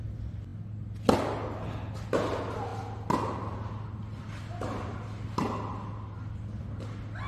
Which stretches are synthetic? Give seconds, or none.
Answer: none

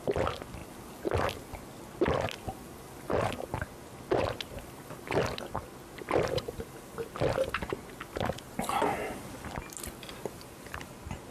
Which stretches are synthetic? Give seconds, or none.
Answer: none

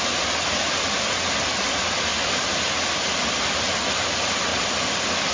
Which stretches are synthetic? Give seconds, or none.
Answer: 4.5-5.3

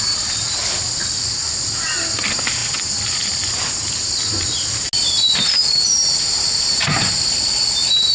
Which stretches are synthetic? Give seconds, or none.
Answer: 6.3-7.4

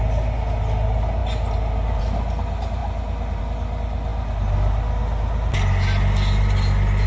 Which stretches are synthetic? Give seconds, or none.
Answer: none

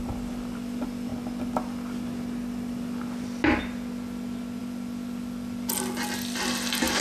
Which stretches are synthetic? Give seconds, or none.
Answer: 0.0-1.1; 4.6-7.0

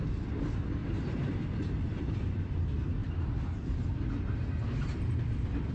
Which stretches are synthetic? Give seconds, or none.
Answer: 0.8-1.4; 3.0-4.1

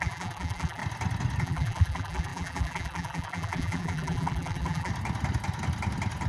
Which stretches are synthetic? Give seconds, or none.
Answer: 0.0-0.8; 1.4-4.9